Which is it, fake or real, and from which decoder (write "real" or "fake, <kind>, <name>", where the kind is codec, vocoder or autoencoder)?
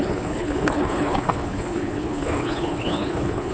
fake, codec, HILCodec